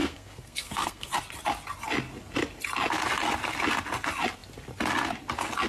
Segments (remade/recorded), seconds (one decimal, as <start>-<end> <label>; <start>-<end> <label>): 0.0-1.1 remade; 1.1-5.7 recorded